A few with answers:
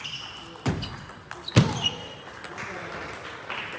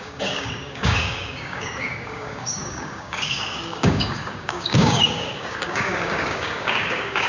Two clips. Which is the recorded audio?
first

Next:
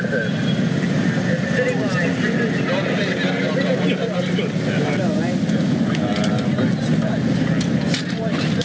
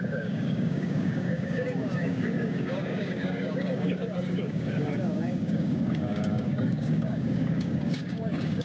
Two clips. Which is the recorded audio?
first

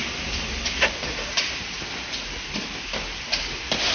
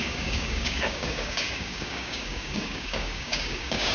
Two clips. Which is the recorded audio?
first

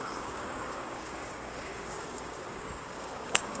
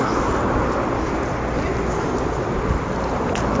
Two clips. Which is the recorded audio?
second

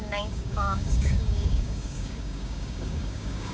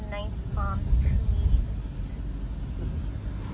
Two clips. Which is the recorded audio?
second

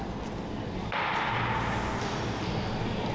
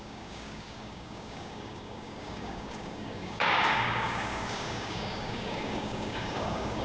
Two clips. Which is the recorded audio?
first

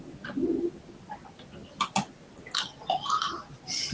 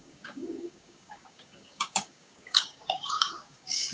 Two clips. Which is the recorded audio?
first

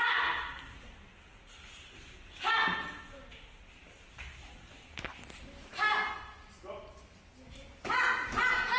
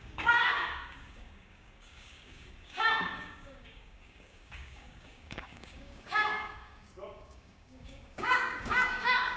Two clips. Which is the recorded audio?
first